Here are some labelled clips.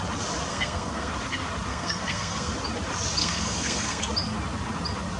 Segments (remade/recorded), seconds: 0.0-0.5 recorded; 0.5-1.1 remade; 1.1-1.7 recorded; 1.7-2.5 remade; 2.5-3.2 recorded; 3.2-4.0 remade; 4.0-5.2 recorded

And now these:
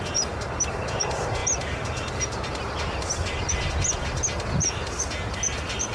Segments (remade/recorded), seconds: 0.0-5.9 recorded

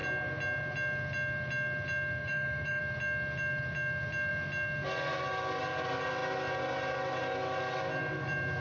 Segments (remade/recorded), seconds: 0.0-2.2 recorded; 2.2-2.8 remade; 2.8-8.6 recorded